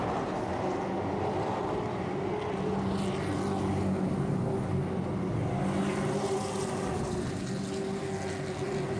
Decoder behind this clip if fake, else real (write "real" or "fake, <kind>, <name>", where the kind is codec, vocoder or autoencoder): real